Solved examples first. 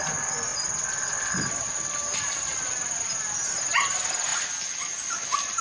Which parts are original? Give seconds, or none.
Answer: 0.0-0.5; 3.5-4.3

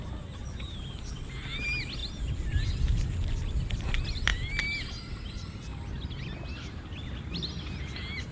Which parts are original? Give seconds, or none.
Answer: 0.0-8.3